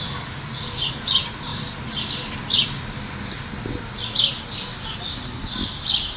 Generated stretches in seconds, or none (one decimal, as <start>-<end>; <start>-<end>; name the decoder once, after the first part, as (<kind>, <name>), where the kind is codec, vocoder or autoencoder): none